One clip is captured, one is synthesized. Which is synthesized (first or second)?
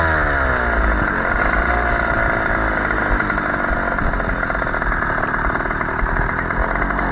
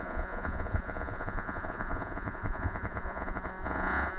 second